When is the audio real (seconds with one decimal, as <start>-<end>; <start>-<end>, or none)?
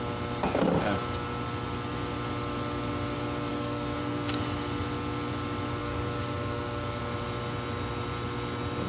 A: 0.0-3.5; 4.4-5.8; 7.0-8.9